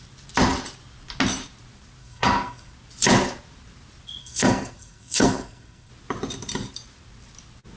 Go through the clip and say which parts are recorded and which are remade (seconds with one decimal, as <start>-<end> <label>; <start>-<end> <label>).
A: 0.0-2.0 recorded; 2.0-2.7 remade; 2.7-4.2 recorded; 4.2-5.9 remade; 5.9-7.8 recorded